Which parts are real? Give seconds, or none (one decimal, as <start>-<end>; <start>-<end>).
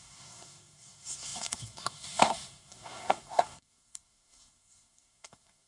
none